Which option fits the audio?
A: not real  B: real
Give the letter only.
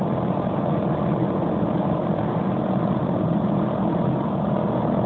B